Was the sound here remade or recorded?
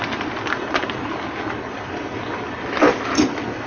recorded